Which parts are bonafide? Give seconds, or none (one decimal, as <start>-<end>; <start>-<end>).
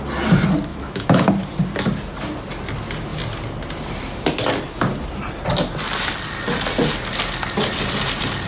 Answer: 0.0-0.7; 1.3-8.5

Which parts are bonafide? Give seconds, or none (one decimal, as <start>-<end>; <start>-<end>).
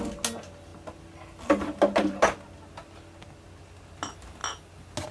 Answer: 0.0-5.1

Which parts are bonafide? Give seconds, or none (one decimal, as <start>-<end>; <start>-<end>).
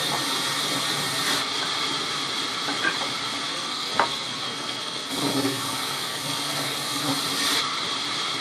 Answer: 0.0-3.5; 7.0-8.4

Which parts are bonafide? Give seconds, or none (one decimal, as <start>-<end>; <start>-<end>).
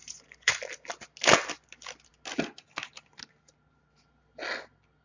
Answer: 0.5-5.0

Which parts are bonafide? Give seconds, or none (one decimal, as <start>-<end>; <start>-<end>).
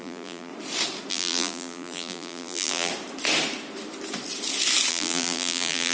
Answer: 0.5-1.1; 2.9-4.9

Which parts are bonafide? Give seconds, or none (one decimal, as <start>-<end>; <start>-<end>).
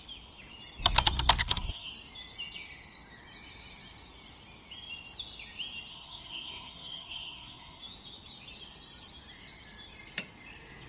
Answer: 0.0-1.4; 1.9-5.9; 7.8-10.9